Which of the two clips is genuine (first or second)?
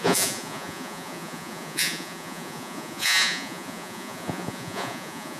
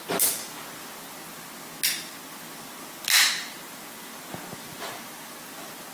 second